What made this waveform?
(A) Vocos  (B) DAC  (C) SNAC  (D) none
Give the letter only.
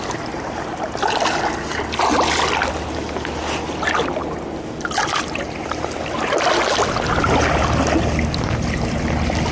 D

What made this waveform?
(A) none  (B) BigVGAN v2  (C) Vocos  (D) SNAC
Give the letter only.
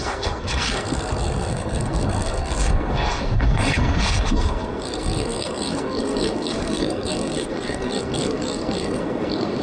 D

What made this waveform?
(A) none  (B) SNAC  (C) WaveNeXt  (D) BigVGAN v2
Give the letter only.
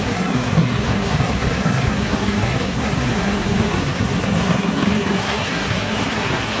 B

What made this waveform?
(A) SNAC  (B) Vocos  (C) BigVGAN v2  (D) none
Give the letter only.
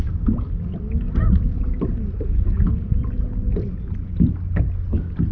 D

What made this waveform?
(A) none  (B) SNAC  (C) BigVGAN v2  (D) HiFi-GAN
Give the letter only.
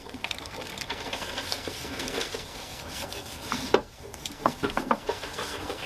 B